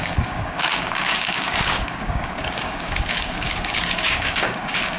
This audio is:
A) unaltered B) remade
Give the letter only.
B